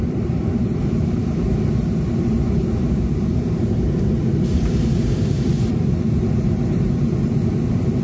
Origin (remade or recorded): remade